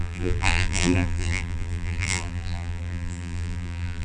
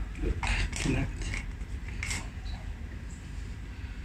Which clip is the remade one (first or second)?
first